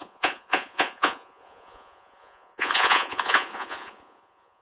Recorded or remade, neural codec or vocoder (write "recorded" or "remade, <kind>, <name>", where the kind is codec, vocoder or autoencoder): remade, vocoder, Vocos